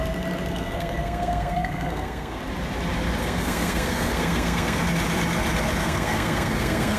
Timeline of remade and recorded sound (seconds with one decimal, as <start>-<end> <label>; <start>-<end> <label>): 0.0-0.5 recorded; 0.5-2.4 remade; 2.4-3.2 recorded; 3.2-4.8 remade; 4.8-5.8 recorded; 5.8-7.0 remade